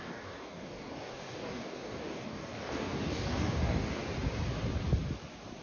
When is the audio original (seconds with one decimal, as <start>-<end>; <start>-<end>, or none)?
4.0-5.6